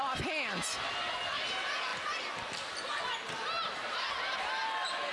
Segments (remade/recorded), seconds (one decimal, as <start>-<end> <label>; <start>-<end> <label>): 0.0-5.1 recorded